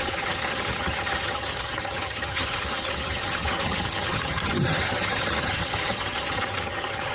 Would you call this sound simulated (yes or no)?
yes